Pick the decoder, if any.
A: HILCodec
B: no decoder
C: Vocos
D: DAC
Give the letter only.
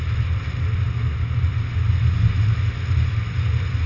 B